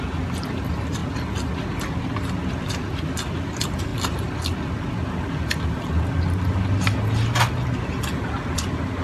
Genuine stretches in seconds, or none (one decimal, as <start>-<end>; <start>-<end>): 1.0-2.5; 3.9-7.8